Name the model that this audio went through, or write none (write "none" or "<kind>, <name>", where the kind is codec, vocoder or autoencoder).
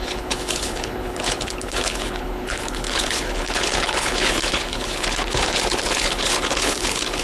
codec, HILCodec